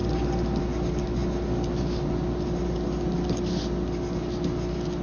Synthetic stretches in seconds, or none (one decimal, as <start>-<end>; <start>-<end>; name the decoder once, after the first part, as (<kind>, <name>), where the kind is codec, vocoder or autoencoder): none